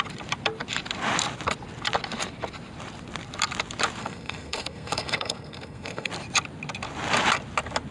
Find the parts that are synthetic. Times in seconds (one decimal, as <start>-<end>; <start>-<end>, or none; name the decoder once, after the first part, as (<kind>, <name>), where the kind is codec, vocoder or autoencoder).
4.0-6.1 (codec, SNAC)